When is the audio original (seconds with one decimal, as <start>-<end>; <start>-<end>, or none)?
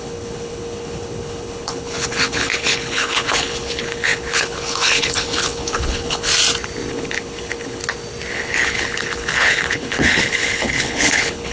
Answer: 6.3-6.9; 7.8-8.3